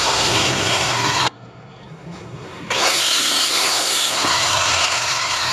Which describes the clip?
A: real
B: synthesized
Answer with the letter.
B